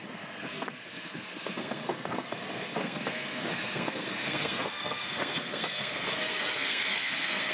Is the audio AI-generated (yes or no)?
yes